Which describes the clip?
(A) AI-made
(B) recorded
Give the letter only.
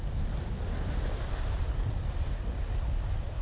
B